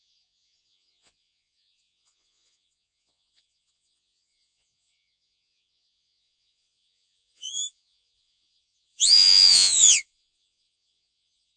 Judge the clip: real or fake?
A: fake